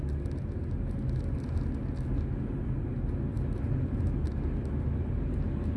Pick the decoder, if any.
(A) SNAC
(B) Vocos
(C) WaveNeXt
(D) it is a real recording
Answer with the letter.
D